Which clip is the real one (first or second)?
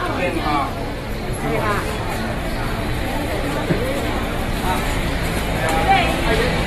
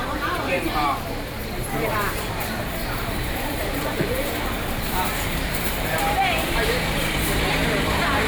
first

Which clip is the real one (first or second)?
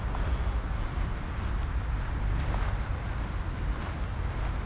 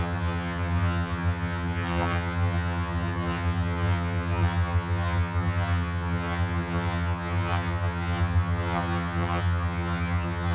first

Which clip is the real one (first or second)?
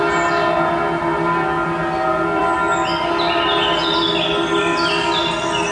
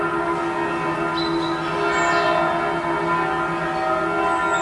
second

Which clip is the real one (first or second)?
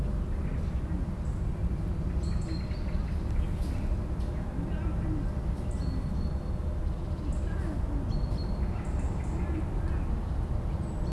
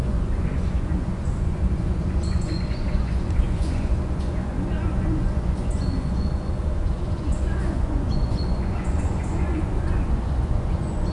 first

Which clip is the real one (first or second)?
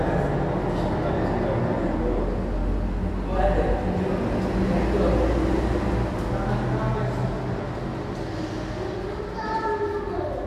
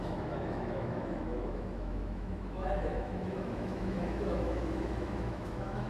first